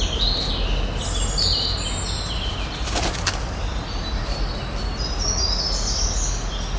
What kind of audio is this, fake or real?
real